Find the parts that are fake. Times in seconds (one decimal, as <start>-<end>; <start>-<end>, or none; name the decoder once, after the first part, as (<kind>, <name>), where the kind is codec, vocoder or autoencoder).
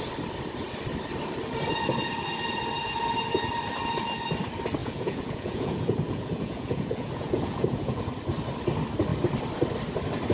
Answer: 4.8-8.0 (vocoder, Vocos)